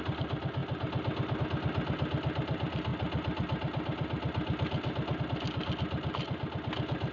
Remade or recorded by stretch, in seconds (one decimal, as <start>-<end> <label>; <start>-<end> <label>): 0.0-7.1 recorded

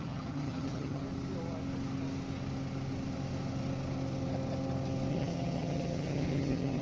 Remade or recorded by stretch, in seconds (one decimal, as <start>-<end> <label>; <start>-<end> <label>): 0.0-1.0 remade; 1.0-5.1 recorded; 5.1-6.8 remade

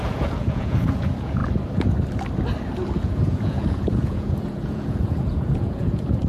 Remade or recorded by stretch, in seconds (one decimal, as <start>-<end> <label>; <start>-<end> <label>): 0.0-1.4 remade; 1.4-3.0 recorded; 3.0-6.3 remade

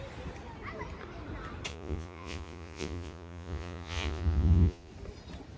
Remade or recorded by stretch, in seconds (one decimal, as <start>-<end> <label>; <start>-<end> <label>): 0.0-1.7 recorded; 1.7-4.9 remade; 4.9-5.6 recorded

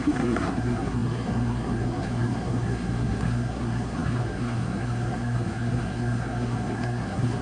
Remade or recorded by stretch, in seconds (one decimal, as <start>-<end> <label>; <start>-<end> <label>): 0.0-7.4 remade